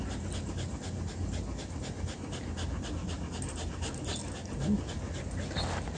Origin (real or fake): real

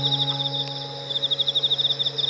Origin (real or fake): real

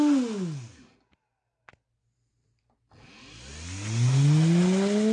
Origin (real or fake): real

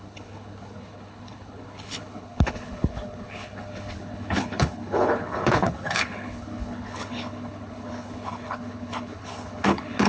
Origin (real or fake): fake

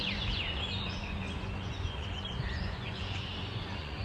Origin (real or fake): fake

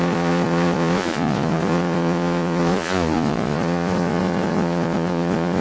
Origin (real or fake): fake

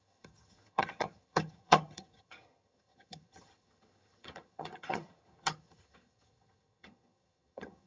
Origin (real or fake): fake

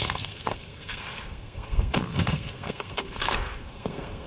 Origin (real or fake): fake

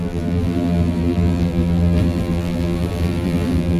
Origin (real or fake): fake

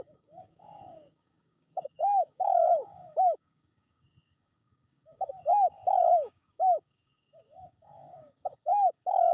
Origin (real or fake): fake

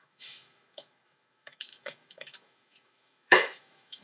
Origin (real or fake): fake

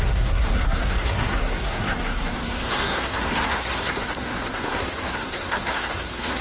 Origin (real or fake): fake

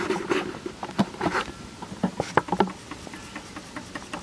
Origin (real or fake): real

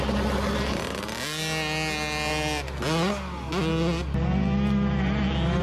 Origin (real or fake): real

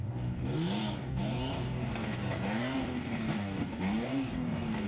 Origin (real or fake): fake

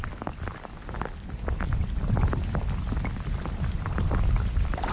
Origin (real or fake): real